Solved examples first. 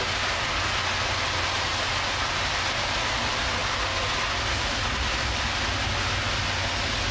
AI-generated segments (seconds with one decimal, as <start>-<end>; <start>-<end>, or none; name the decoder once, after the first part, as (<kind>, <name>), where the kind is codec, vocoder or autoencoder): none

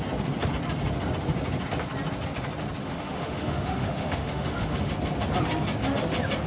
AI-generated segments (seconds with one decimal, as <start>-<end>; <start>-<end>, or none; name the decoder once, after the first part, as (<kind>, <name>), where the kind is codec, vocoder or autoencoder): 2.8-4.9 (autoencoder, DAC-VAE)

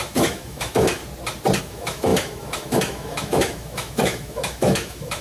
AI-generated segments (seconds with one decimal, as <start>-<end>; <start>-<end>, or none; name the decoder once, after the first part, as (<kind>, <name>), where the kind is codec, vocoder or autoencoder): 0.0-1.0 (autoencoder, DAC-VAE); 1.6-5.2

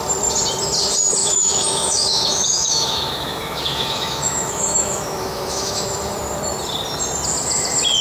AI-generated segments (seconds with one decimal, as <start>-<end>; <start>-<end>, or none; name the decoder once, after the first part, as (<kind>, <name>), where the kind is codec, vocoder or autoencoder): 1.2-6.0 (autoencoder, DAC-VAE)

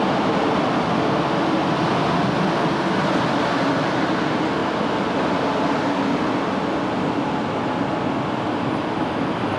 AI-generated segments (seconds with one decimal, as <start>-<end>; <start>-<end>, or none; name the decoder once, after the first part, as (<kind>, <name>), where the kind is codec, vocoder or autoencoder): none

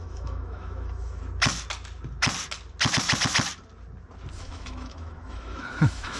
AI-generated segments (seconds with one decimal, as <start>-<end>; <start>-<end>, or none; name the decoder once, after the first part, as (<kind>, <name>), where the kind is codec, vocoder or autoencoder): 0.0-1.2 (autoencoder, DAC-VAE); 4.4-6.2

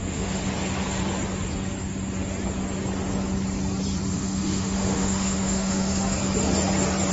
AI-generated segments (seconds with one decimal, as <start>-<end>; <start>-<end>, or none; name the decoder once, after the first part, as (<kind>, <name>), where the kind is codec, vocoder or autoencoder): 0.0-0.4 (autoencoder, DAC-VAE); 4.1-6.2